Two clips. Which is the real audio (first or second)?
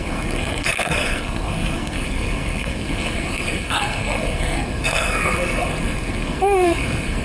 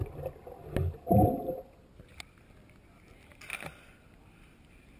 second